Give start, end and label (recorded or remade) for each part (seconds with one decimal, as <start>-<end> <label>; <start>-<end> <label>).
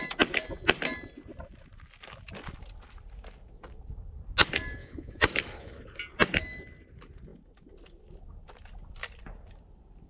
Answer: 0.0-4.8 recorded; 4.8-5.8 remade; 5.8-10.1 recorded